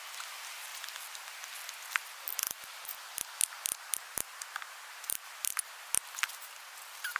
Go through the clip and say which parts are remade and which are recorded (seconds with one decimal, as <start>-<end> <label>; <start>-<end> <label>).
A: 0.0-7.2 recorded